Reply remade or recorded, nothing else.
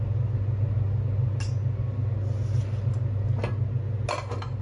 recorded